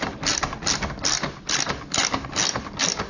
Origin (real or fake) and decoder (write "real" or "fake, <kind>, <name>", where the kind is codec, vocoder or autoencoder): real